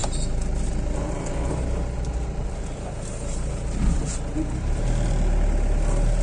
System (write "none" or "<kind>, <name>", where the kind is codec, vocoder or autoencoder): none